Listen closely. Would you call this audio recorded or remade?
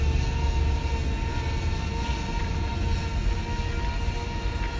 recorded